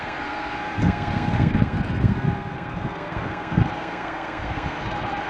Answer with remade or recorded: remade